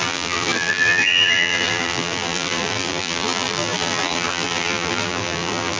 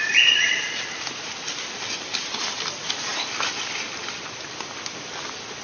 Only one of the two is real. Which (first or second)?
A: second